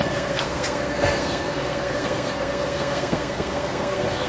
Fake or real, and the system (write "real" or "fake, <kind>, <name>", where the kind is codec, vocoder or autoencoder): fake, codec, SNAC